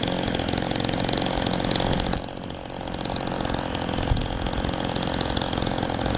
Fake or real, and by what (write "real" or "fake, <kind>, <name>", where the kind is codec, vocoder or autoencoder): real